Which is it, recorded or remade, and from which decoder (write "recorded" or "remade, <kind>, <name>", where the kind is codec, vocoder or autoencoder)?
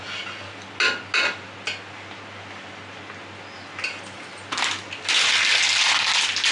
recorded